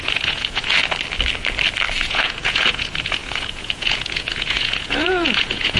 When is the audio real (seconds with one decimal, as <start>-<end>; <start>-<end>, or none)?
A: 0.7-2.0